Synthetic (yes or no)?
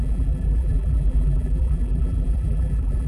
yes